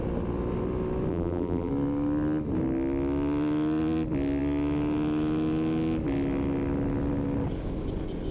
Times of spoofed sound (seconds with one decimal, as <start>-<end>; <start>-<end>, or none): 1.1-1.7